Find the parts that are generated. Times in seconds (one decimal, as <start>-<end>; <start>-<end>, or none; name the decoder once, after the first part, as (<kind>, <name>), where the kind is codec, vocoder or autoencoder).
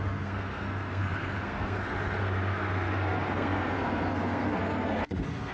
0.0-5.5 (codec, SNAC)